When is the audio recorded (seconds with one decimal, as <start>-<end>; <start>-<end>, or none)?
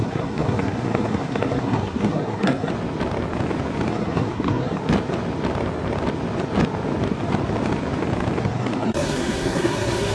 2.7-3.9; 4.8-8.4